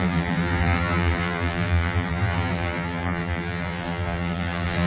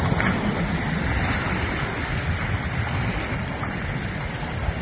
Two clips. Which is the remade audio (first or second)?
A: first